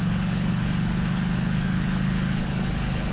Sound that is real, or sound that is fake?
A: fake